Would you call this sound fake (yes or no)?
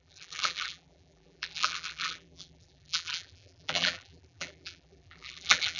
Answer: yes